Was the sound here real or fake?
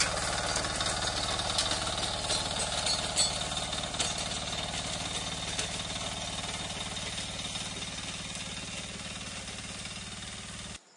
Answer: real